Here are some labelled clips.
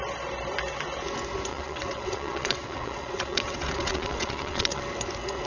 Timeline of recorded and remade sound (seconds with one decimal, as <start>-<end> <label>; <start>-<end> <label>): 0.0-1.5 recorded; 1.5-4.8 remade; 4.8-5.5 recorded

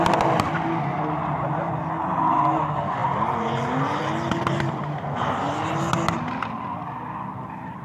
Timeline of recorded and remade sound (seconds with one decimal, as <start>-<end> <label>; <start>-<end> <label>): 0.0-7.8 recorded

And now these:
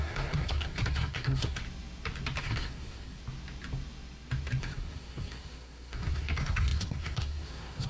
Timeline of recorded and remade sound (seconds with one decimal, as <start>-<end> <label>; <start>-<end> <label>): 0.0-1.6 remade; 1.6-2.4 recorded; 2.4-3.2 remade; 3.2-4.6 recorded; 4.6-7.9 remade

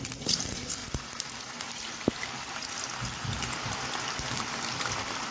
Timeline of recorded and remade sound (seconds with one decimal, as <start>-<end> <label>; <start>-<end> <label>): 0.0-0.8 remade; 0.8-4.0 recorded; 4.0-5.3 remade

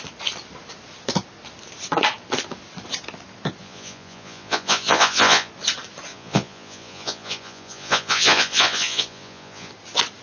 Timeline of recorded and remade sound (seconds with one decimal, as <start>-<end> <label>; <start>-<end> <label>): 0.0-3.6 recorded; 3.6-5.5 remade; 5.5-6.1 recorded; 6.1-9.7 remade; 9.7-10.2 recorded